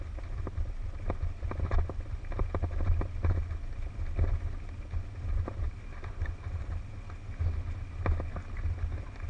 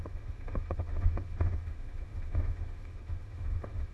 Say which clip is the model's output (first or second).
second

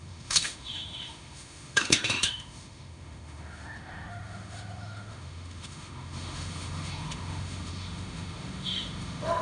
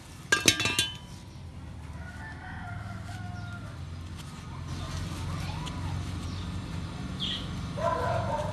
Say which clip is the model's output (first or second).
first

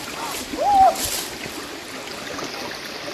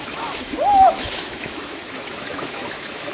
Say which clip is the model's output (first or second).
second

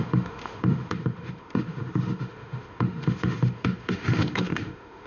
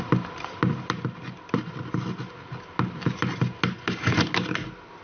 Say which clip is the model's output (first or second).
first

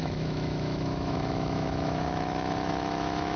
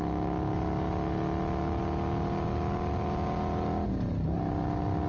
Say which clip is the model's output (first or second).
first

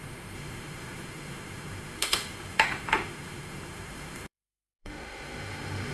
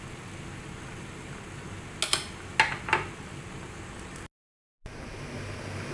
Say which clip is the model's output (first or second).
first